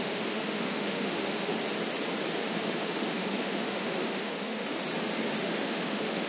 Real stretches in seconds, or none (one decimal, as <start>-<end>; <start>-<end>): 1.5-2.4; 4.8-5.4